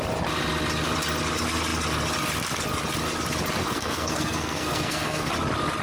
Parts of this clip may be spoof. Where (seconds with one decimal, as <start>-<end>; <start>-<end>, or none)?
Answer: 3.6-5.3